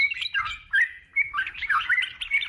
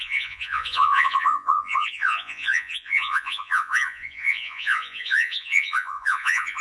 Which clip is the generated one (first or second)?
second